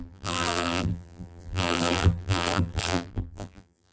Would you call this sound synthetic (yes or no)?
yes